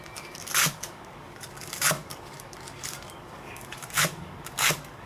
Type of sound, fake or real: fake